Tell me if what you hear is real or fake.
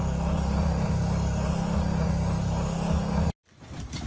real